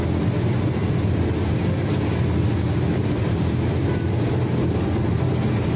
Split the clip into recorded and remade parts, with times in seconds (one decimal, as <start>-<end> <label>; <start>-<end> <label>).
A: 0.0-5.8 recorded